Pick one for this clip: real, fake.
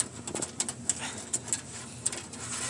real